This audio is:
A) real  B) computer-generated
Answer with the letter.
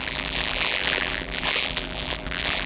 B